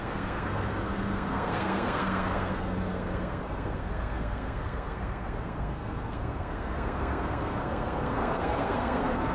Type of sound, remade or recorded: remade